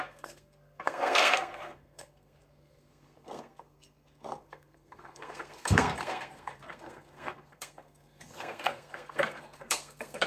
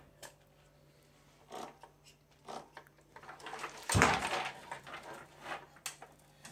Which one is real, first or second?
second